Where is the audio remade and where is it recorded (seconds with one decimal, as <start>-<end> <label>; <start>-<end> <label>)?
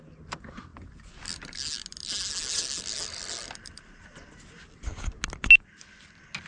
0.0-6.5 recorded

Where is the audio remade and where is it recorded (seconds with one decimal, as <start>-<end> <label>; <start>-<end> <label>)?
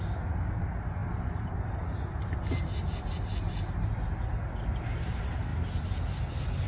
0.0-6.7 recorded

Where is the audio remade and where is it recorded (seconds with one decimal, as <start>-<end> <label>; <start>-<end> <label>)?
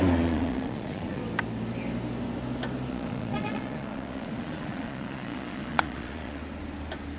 0.0-1.2 remade; 1.2-2.9 recorded; 2.9-6.4 remade; 6.4-7.2 recorded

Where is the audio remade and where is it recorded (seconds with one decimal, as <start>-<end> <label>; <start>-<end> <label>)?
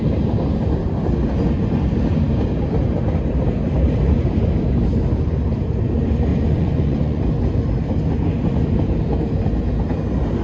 0.0-6.3 recorded; 6.3-7.2 remade; 7.2-10.4 recorded